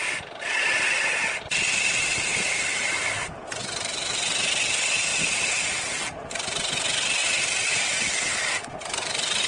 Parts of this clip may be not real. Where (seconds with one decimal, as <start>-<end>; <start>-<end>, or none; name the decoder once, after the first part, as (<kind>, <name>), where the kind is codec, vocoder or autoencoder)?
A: none